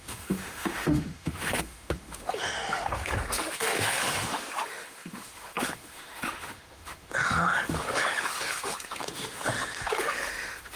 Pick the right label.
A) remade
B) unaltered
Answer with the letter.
A